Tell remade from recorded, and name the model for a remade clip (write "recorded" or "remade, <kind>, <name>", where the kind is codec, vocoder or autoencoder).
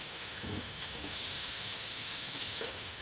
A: remade, autoencoder, DAC-VAE